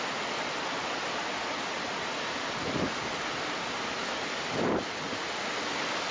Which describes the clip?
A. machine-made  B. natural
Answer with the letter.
A